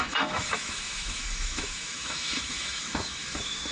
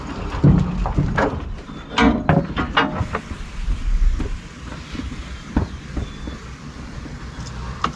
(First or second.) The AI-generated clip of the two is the first